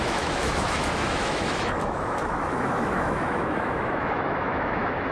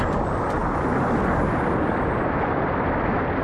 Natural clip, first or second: second